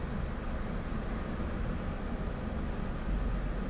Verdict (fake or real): real